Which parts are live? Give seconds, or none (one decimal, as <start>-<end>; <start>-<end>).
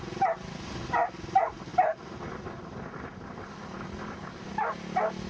0.0-1.7; 4.4-5.3